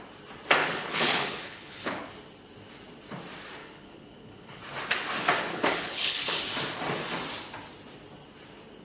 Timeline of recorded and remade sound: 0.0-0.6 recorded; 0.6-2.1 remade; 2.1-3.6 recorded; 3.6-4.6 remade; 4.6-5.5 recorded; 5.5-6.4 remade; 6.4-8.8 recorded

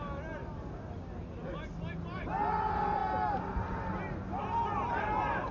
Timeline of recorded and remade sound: 0.0-5.5 recorded

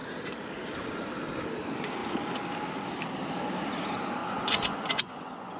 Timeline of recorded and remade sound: 0.0-4.2 recorded; 4.2-5.6 remade

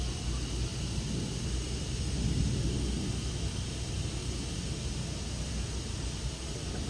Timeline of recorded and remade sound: 0.0-6.9 recorded